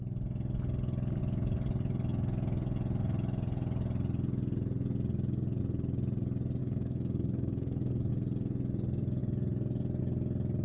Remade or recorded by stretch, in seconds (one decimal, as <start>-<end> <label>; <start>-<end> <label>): 0.0-6.6 recorded; 6.6-8.1 remade; 8.1-10.6 recorded